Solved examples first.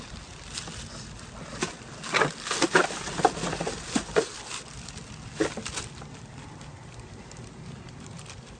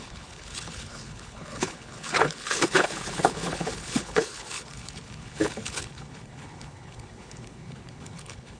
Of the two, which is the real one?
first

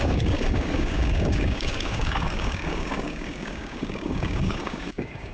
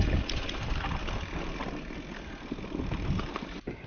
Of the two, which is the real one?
second